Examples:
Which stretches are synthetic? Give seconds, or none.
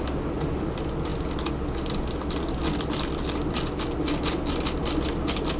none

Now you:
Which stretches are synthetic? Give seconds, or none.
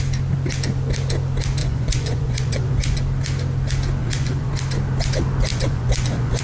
1.6-3.0 (vocoder, Vocos); 4.0-4.5; 5.5-6.4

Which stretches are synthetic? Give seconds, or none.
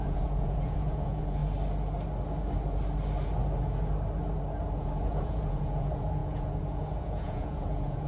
0.0-1.4 (vocoder, Vocos); 4.8-8.1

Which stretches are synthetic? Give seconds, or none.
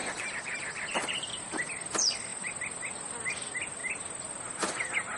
none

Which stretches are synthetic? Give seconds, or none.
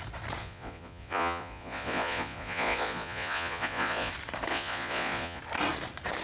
0.4-4.1 (vocoder, Vocos); 4.5-5.4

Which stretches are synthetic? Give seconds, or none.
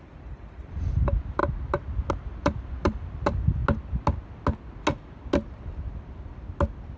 0.0-1.4 (vocoder, BigVGAN v2); 2.1-3.6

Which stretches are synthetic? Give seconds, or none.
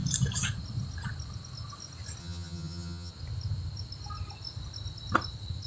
2.2-3.1 (vocoder, HiFi-GAN)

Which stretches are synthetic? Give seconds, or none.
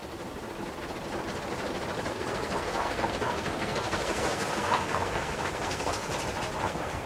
2.1-6.1 (codec, SNAC); 6.6-7.1